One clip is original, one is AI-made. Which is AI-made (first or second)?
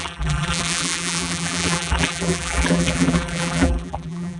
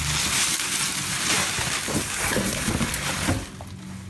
first